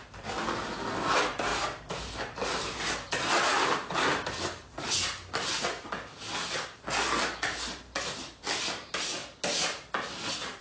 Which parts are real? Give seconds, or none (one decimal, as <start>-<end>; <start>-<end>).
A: 0.0-10.6